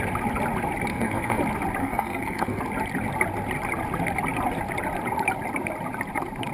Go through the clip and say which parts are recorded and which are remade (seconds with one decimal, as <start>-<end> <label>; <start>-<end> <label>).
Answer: 0.0-0.9 recorded; 0.9-1.4 remade; 1.4-1.8 recorded; 1.8-2.6 remade; 2.6-6.5 recorded